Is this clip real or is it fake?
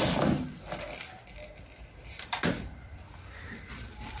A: real